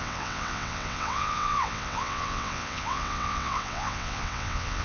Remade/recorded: remade